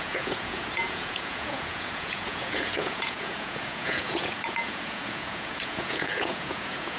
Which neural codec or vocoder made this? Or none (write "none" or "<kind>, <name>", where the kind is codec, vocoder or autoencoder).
vocoder, Vocos